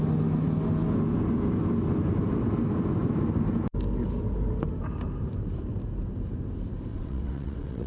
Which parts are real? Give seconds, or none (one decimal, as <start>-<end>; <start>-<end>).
0.0-6.9